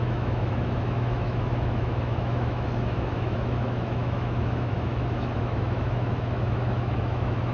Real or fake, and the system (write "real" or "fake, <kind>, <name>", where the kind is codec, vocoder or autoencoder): fake, autoencoder, DAC-VAE